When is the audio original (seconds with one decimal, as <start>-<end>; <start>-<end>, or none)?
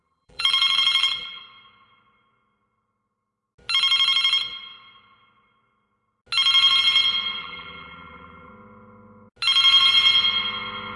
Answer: 1.4-7.4; 8.5-11.0